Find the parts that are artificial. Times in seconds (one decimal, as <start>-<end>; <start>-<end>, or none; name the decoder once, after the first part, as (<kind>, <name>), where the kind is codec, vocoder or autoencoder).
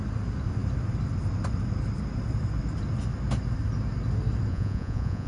4.5-5.3 (vocoder, Vocos)